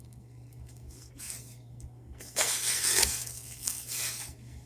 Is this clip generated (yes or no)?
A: yes